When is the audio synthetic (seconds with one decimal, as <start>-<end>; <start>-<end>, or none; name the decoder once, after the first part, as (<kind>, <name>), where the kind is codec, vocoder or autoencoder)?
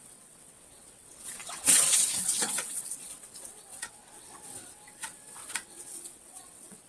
0.0-6.9 (vocoder, WaveNeXt)